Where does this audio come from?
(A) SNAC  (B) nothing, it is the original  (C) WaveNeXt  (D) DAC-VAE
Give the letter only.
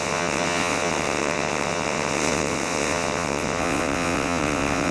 C